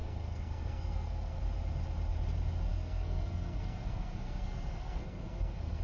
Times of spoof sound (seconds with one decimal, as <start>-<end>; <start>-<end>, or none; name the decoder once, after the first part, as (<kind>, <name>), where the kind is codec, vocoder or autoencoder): 0.0-1.4 (codec, SNAC); 2.7-5.8